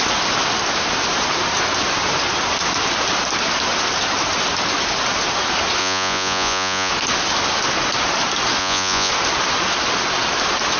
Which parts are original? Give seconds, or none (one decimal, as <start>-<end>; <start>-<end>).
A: 0.0-5.8; 6.9-8.6; 9.1-10.8